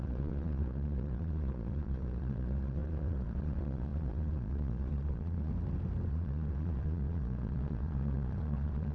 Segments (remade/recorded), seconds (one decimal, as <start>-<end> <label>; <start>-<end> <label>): 0.0-5.5 remade; 5.5-6.1 recorded; 6.1-8.9 remade